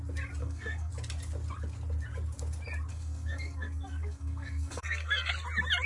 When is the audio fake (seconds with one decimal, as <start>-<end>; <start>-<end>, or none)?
0.4-0.9; 2.9-5.3